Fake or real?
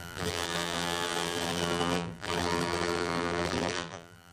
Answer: fake